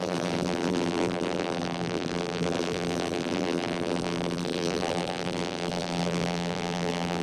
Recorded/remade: remade